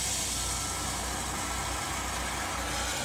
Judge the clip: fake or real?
real